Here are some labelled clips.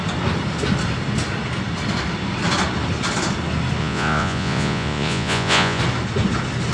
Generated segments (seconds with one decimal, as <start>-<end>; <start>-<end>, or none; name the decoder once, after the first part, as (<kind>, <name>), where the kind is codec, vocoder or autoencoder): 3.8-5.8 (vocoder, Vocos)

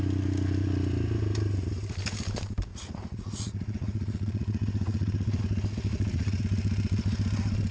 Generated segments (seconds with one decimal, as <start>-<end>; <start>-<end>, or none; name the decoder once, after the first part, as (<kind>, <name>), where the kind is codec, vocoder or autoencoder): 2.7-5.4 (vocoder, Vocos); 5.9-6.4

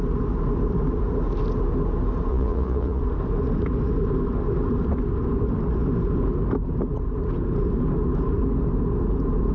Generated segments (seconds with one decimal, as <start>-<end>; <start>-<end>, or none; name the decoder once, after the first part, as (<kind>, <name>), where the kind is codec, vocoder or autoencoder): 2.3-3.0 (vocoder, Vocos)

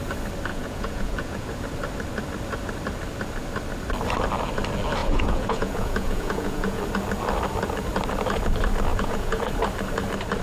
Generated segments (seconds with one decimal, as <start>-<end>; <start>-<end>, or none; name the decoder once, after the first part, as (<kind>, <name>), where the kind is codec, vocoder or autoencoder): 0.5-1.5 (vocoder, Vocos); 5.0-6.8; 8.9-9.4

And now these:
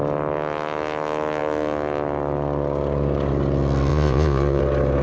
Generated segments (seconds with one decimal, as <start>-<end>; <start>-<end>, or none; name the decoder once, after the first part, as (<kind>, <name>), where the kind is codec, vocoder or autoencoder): 3.9-4.6 (vocoder, Vocos)

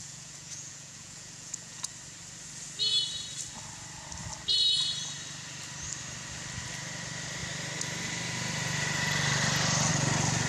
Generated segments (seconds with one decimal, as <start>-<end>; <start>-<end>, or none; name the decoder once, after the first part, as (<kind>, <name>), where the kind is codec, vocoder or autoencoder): 0.0-1.9 (vocoder, Vocos)

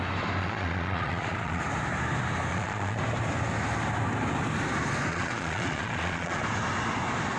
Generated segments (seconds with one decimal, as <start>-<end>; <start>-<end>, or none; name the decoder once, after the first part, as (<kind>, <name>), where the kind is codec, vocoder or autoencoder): 0.4-1.6 (vocoder, Vocos); 2.5-3.0; 5.1-6.4